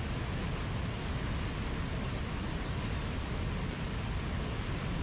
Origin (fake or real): real